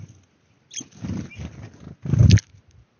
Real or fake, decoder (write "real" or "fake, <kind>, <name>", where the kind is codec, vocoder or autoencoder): real